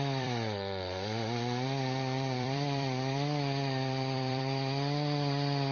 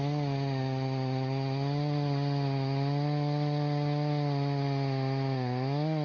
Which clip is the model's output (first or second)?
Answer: first